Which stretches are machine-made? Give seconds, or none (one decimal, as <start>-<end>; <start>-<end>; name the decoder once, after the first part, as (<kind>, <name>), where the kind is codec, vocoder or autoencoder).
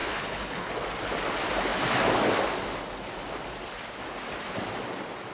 0.0-0.7 (codec, HILCodec)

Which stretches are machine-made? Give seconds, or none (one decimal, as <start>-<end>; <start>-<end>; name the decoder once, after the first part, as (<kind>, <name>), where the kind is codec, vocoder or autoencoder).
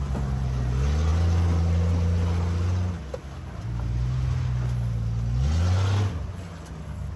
none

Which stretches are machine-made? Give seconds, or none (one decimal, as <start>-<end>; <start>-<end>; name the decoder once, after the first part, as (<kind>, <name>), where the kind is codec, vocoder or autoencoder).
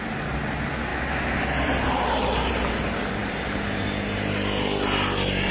none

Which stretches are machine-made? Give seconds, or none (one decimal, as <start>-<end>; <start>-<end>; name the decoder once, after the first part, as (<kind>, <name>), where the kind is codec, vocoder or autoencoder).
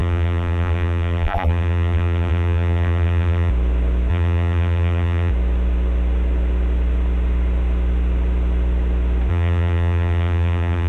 0.0-3.5 (vocoder, BigVGAN v2); 4.1-5.3; 9.3-10.9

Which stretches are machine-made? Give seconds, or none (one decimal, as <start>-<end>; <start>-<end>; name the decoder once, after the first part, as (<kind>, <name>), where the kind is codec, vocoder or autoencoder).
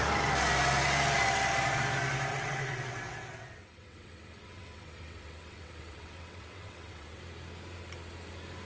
2.3-7.2 (vocoder, WaveNeXt)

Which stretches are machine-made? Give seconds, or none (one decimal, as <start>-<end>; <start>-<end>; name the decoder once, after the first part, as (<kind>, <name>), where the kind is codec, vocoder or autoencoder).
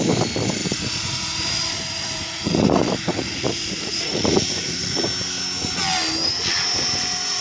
0.6-5.0 (vocoder, Vocos)